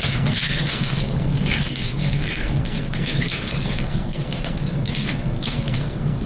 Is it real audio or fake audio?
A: fake